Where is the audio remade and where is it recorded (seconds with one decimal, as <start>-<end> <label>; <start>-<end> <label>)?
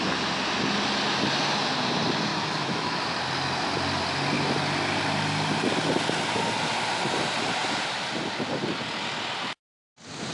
0.0-2.3 recorded; 2.3-3.0 remade; 3.0-10.3 recorded